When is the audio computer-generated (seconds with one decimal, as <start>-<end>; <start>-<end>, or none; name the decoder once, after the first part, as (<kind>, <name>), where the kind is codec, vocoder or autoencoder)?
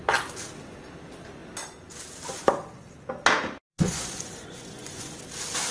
3.7-5.2 (vocoder, Vocos)